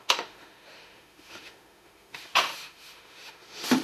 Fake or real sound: fake